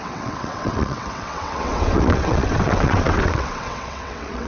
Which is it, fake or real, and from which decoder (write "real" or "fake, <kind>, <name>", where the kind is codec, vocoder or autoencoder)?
fake, vocoder, WaveNeXt